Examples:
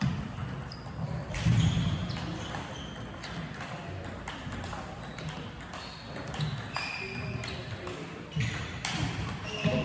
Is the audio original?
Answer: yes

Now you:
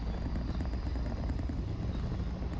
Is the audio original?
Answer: yes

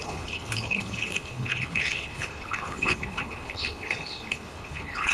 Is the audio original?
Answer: no